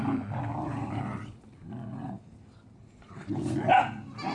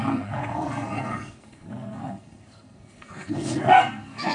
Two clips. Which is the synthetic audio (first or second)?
second